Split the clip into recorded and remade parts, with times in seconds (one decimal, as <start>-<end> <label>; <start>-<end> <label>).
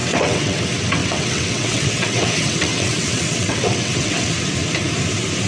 0.0-0.6 remade; 0.6-1.0 recorded; 1.0-4.3 remade; 4.3-5.5 recorded